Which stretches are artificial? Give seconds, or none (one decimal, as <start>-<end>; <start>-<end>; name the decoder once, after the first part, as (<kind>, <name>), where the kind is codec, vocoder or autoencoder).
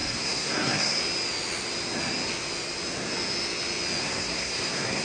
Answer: 0.0-1.0 (codec, SNAC); 4.0-5.0